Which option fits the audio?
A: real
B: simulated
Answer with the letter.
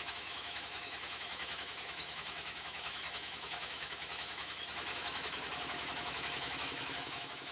B